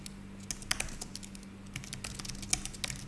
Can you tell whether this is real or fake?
real